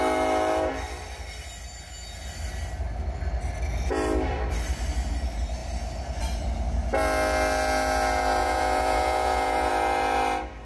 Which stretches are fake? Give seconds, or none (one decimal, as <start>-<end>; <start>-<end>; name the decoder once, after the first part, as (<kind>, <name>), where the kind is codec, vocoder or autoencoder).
8.4-9.7 (vocoder, Vocos)